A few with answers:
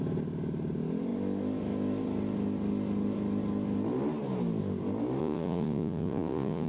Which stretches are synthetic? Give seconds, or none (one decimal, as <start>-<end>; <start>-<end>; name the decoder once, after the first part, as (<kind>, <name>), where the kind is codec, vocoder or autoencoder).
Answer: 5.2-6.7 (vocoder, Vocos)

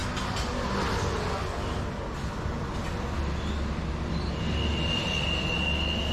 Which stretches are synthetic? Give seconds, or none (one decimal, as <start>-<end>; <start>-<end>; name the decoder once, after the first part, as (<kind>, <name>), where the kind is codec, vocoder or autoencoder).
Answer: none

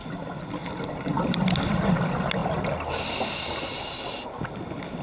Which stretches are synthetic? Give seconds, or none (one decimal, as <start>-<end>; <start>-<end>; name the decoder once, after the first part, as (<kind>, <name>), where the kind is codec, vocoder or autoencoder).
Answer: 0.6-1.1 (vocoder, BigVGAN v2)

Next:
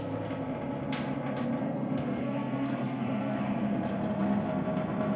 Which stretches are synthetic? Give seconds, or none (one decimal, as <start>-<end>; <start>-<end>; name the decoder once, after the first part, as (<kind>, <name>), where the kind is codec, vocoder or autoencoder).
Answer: 1.6-3.4 (codec, SNAC)

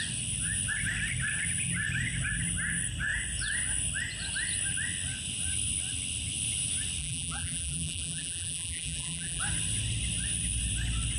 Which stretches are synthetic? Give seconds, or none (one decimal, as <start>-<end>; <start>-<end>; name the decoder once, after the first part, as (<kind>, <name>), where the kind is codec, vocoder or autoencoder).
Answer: 7.0-9.4 (vocoder, BigVGAN v2)

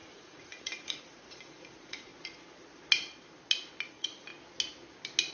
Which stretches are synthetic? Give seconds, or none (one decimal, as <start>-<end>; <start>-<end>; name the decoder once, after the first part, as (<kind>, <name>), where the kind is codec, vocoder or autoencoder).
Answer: 0.0-2.1 (vocoder, Vocos); 3.9-4.3

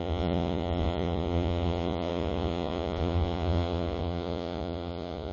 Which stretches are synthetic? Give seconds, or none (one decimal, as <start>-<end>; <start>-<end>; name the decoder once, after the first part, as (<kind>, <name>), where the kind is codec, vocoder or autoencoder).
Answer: 0.0-5.3 (vocoder, Vocos)